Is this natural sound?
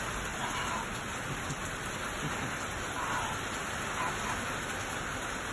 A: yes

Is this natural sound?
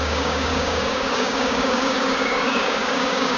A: no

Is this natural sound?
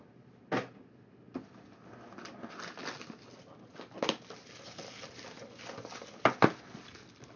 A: yes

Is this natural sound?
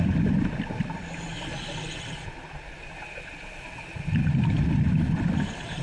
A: yes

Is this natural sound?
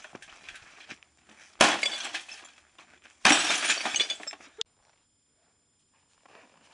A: yes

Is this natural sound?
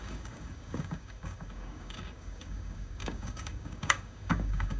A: no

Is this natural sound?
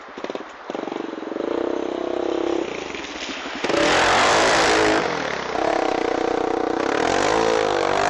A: yes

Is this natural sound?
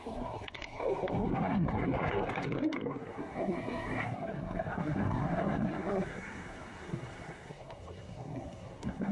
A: no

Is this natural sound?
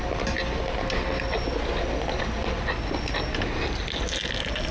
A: yes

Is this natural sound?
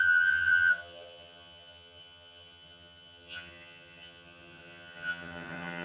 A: no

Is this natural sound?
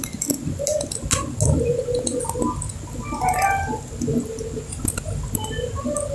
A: yes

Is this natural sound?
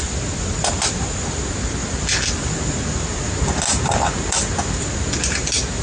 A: yes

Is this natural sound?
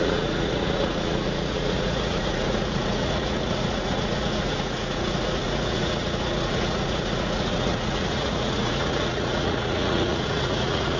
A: no